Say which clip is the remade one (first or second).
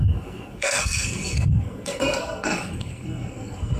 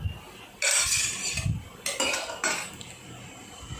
first